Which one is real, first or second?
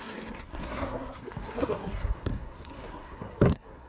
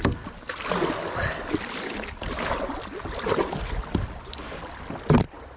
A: second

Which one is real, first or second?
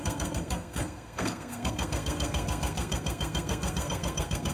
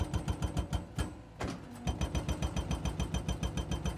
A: second